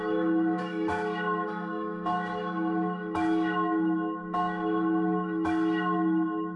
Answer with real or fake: fake